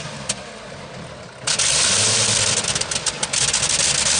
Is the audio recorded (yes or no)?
yes